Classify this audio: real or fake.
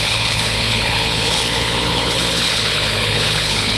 fake